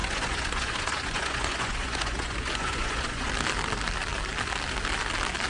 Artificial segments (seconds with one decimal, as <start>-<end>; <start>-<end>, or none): 0.0-3.3